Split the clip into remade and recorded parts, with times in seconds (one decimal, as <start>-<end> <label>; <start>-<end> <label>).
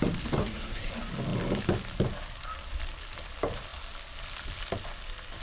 0.0-0.4 recorded; 0.4-0.9 remade; 0.9-5.4 recorded